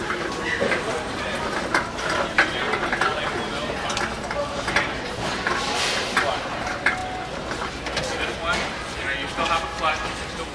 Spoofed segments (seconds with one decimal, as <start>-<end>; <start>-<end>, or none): 0.0-1.4

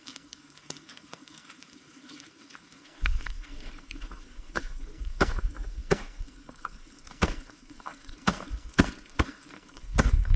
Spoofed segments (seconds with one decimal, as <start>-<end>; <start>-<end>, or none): 0.0-10.4